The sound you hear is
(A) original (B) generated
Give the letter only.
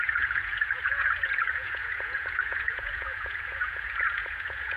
B